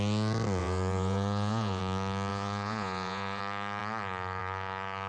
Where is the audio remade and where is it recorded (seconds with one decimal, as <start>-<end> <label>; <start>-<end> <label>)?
0.0-0.6 recorded; 0.6-1.8 remade; 1.8-2.3 recorded; 2.3-3.4 remade; 3.4-5.1 recorded